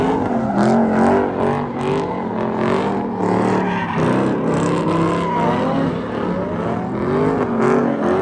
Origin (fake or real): real